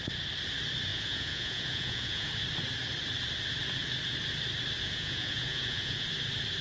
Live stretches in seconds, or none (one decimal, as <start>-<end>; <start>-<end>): 0.0-0.9; 2.3-4.8; 6.1-6.6